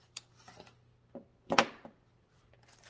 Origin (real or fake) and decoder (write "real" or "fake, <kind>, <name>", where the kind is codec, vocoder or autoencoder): real